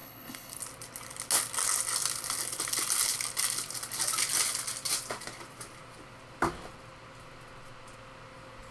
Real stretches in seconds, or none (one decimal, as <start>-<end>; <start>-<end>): 0.6-8.7